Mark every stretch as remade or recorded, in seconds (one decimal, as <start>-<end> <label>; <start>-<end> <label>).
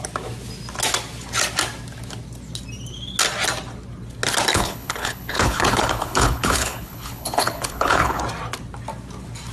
0.0-4.5 recorded; 4.5-8.2 remade; 8.2-9.5 recorded